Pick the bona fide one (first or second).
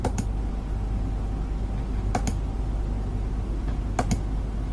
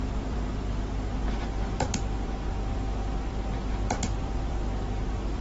first